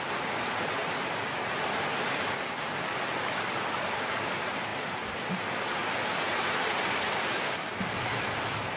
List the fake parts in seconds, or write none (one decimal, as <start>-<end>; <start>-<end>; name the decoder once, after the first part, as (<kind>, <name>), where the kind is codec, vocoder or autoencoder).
none